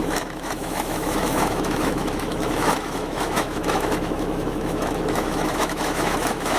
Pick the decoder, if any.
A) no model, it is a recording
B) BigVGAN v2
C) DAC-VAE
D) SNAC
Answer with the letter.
C